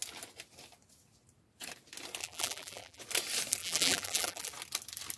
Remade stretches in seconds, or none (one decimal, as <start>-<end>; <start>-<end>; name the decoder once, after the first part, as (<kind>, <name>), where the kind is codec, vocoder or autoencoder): 2.2-3.0 (vocoder, BigVGAN v2); 3.6-4.5